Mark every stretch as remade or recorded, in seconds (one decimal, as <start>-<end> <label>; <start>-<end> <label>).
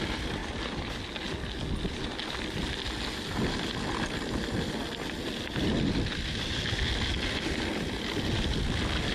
0.0-9.1 recorded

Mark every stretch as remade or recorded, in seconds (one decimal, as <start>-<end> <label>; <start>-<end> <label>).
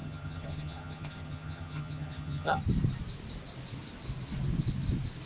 0.0-2.6 remade; 2.6-5.3 recorded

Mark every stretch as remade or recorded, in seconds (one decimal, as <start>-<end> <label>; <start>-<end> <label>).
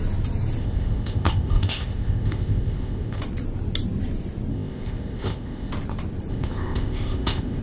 0.0-0.6 recorded; 0.6-3.2 remade; 3.2-4.5 recorded; 4.5-5.7 remade; 5.7-6.3 recorded; 6.3-7.6 remade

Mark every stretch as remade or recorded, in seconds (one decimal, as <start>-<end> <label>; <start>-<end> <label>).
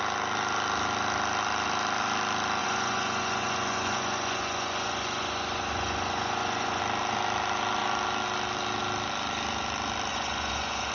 0.0-2.6 recorded; 2.6-6.8 remade; 6.8-10.1 recorded; 10.1-10.9 remade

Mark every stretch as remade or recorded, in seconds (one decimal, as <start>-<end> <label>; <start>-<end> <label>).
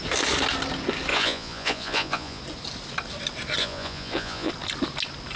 0.0-1.1 recorded; 1.1-2.4 remade; 2.4-3.6 recorded; 3.6-4.5 remade; 4.5-5.4 recorded